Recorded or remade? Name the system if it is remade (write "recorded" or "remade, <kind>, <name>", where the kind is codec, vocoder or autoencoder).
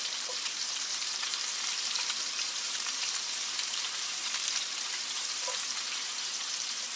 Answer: remade, vocoder, BigVGAN v2